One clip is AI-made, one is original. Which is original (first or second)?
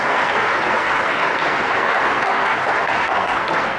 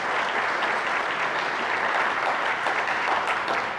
second